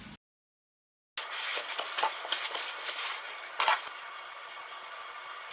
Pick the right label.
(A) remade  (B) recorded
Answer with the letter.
B